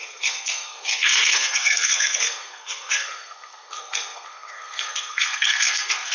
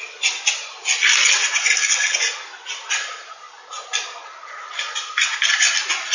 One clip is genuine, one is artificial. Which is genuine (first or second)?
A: second